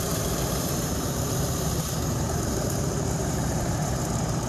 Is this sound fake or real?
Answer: fake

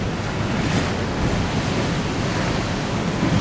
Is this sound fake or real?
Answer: real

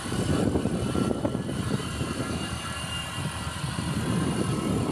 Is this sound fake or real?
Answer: fake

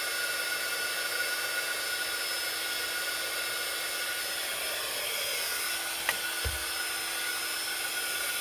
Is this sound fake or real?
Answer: real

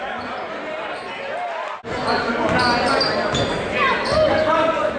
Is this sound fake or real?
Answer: real